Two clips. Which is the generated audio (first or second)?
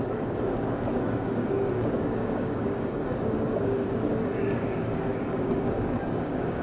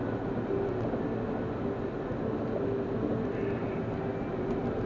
first